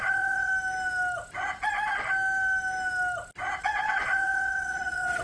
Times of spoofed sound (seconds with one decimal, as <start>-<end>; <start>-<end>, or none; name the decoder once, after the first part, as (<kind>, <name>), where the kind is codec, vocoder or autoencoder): 0.0-0.5 (vocoder, WaveNeXt); 3.6-5.2